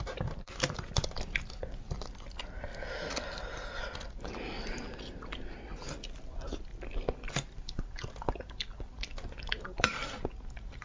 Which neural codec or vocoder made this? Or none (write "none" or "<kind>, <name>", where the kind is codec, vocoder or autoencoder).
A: none